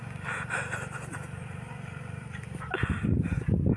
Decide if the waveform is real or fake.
real